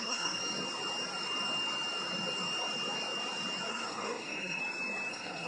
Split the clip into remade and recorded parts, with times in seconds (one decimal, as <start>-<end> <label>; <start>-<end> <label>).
0.0-0.4 remade; 0.4-3.7 recorded; 3.7-4.6 remade; 4.6-5.1 recorded; 5.1-5.5 remade